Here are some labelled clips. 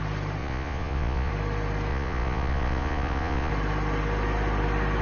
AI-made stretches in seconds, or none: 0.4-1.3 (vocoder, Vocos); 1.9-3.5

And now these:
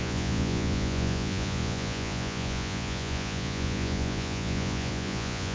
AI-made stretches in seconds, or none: 0.0-5.5 (vocoder, Vocos)

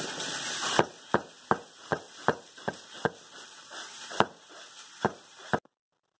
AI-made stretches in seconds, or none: 1.9-5.2 (vocoder, BigVGAN v2)

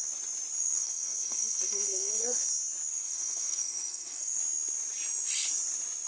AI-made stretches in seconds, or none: 0.6-2.5 (codec, SNAC); 2.9-4.4

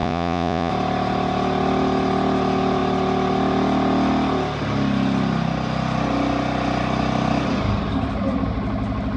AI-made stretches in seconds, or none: 0.0-0.7 (vocoder, Vocos)

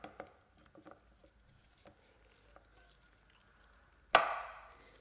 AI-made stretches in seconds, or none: none

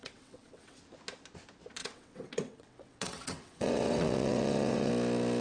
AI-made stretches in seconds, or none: 0.0-0.8 (vocoder, WaveNeXt); 1.8-4.9